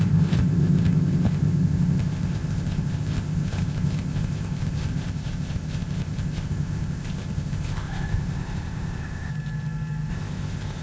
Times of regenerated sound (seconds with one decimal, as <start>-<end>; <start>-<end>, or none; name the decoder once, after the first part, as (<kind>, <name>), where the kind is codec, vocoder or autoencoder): 0.0-9.3 (codec, ZipCodec); 10.1-10.8